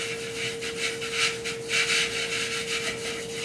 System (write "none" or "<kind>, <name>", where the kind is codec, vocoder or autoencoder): none